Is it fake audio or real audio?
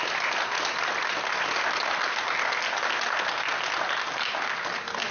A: real